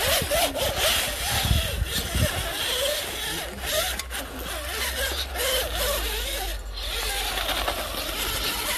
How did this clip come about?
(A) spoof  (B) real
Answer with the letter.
B